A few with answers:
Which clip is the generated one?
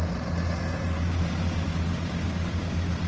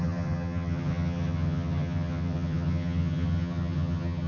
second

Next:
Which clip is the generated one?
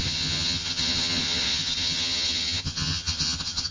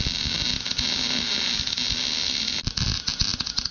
first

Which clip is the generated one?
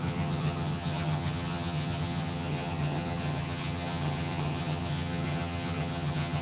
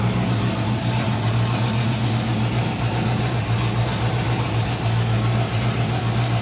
first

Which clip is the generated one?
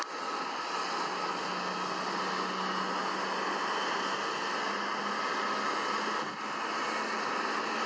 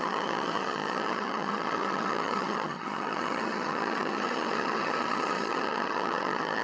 second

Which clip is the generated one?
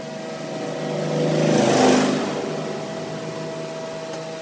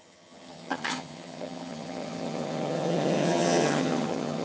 second